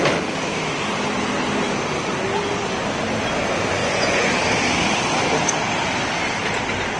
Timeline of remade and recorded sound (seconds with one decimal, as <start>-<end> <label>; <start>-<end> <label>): 0.0-3.8 recorded; 3.8-4.3 remade; 4.3-7.0 recorded

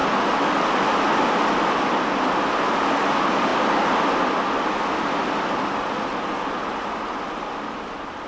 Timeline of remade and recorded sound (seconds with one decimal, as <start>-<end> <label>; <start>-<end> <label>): 0.0-8.3 recorded

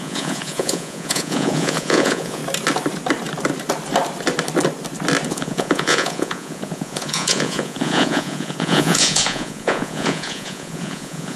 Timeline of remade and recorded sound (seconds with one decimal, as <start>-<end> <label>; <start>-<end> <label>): 0.0-2.4 remade; 2.4-5.3 recorded; 5.3-11.4 remade

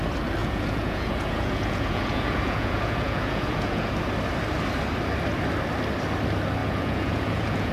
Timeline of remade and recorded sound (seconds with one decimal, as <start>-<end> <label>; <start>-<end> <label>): 0.0-0.4 recorded; 0.4-3.9 remade; 3.9-6.6 recorded; 6.6-7.7 remade

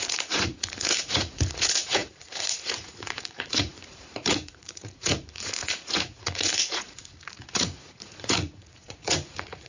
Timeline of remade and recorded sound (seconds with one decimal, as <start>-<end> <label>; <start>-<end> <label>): 0.0-9.7 remade

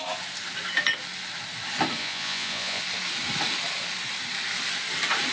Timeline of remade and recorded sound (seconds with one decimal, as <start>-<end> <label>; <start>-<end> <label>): 0.0-2.0 recorded; 2.0-2.8 remade; 2.8-5.3 recorded